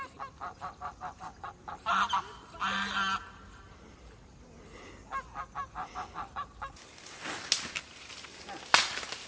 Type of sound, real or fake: real